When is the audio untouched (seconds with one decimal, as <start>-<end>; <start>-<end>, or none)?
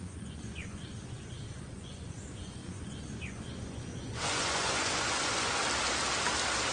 5.6-6.7